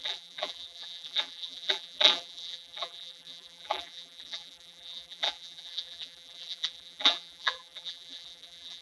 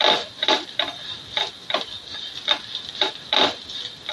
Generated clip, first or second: first